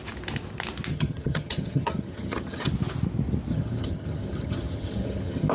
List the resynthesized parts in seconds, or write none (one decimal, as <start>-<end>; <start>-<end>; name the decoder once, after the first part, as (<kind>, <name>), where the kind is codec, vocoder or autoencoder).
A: 0.9-2.7 (vocoder, HiFi-GAN); 3.5-5.5